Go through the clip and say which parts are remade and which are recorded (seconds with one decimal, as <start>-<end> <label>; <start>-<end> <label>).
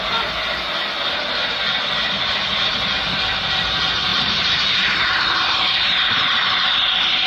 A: 0.0-4.1 recorded; 4.1-6.7 remade; 6.7-7.3 recorded